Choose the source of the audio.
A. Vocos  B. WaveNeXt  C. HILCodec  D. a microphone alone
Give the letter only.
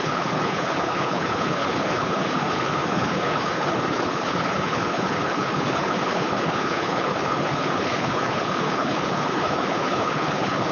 C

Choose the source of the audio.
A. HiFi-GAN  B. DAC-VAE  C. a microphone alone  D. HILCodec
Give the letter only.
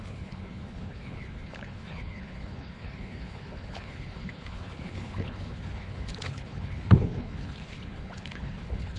D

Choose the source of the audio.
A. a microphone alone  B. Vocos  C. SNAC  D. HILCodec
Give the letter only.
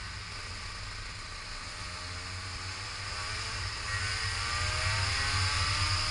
A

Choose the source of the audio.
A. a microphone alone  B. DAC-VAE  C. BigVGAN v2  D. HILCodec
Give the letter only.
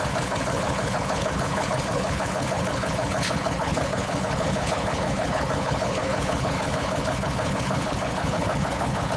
D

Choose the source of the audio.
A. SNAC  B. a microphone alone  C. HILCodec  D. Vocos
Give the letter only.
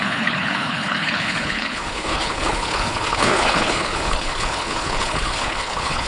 C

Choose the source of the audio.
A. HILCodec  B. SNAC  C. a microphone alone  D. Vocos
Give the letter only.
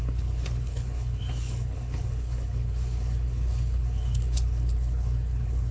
A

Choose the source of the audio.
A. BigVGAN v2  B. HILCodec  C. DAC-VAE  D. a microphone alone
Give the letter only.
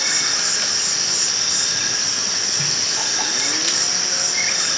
D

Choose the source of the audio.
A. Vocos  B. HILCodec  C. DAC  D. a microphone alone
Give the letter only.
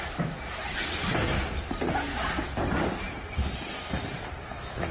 D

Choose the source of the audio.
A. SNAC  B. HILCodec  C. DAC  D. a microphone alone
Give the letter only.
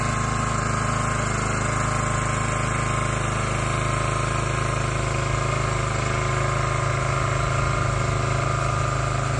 D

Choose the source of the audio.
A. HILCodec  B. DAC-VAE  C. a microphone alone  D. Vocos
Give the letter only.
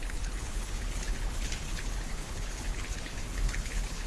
A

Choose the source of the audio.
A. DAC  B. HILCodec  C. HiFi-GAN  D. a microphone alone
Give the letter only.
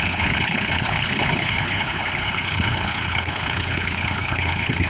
B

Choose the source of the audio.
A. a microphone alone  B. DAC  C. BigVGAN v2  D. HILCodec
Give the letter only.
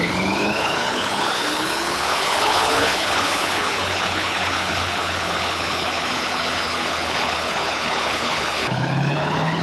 D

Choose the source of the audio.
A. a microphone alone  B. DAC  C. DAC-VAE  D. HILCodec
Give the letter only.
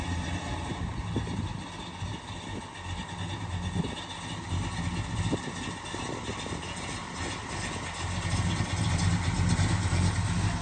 A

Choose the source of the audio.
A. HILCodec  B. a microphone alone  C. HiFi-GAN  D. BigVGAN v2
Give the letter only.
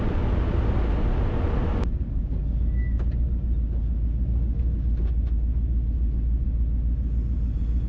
B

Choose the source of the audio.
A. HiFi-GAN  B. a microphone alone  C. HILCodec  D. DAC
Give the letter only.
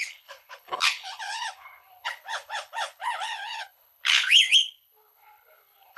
C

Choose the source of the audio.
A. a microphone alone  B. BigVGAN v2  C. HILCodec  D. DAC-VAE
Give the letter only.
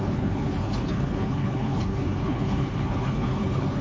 C